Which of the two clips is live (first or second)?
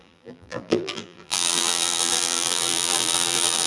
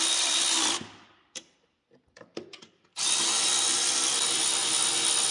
second